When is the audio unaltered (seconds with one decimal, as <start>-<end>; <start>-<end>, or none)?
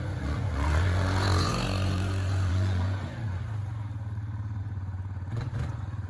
3.4-4.6